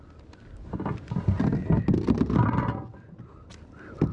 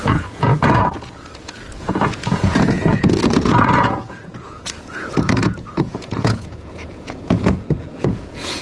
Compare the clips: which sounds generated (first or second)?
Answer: second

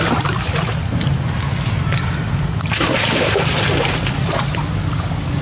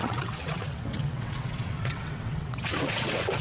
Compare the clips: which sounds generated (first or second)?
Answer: second